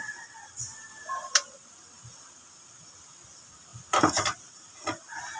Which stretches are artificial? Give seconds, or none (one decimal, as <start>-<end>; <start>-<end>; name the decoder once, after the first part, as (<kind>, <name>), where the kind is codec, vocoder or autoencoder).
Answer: none

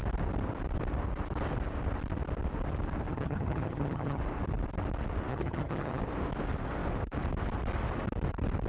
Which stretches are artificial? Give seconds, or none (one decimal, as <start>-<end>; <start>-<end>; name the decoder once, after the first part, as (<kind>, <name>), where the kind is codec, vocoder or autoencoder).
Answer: 3.1-4.2 (vocoder, HiFi-GAN); 5.3-6.0

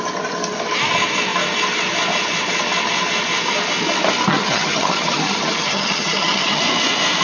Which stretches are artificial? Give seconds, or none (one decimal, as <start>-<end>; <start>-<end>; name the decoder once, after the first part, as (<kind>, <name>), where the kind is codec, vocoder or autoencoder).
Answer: 4.3-6.6 (vocoder, HiFi-GAN)

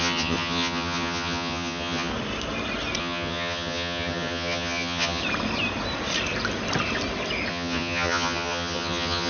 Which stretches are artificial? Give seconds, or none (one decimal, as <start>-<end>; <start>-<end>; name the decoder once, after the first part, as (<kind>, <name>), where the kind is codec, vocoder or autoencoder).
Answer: 0.0-2.1 (vocoder, HiFi-GAN); 3.0-5.2; 7.5-9.3

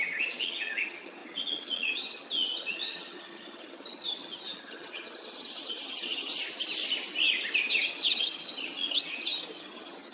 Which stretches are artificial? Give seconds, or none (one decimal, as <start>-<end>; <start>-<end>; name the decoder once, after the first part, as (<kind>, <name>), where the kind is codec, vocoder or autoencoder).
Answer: 0.0-6.3 (vocoder, HiFi-GAN); 7.6-10.1

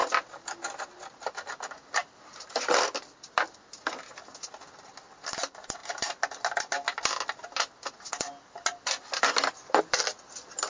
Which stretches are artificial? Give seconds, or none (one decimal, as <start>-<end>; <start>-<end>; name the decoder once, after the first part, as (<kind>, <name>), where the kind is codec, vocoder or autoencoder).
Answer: none

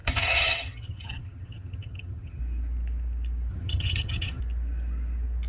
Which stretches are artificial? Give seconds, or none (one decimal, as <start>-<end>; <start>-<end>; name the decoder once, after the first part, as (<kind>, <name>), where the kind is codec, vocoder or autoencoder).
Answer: 0.0-2.4 (vocoder, HiFi-GAN); 3.5-4.4

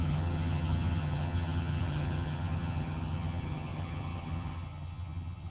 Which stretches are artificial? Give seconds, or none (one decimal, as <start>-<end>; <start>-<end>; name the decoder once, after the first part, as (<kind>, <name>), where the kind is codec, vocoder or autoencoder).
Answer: 0.0-5.5 (vocoder, HiFi-GAN)